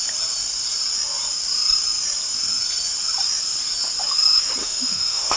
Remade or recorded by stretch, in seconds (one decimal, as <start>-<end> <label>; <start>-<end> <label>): 0.0-4.6 recorded; 4.6-5.4 remade